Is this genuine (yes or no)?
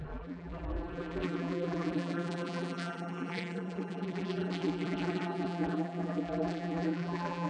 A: no